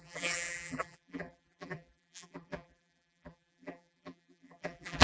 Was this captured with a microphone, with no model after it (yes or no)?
no